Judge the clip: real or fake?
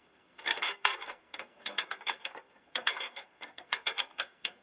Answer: fake